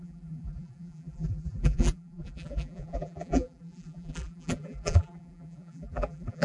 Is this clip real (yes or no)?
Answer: no